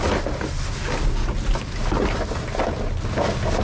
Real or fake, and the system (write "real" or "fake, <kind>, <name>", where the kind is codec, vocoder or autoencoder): real